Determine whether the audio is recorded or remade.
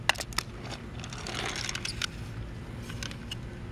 recorded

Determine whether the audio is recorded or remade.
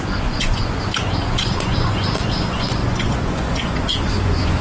remade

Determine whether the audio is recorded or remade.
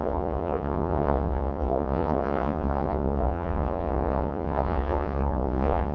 remade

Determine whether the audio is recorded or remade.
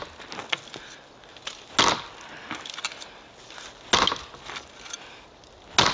recorded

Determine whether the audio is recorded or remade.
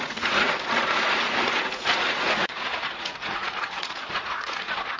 remade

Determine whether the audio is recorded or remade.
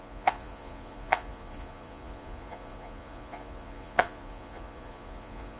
remade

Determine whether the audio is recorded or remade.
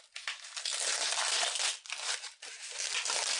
recorded